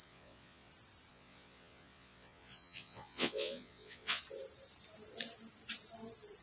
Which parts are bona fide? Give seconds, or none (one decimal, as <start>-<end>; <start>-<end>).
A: 0.7-1.1; 4.2-6.4